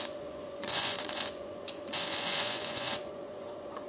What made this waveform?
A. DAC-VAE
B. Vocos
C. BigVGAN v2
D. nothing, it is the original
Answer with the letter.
B